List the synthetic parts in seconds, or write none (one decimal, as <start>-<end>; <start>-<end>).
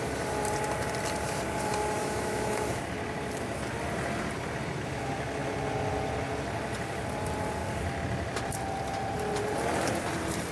2.0-2.8